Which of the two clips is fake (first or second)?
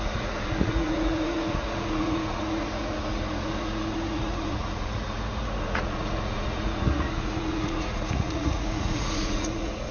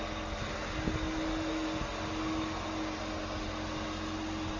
first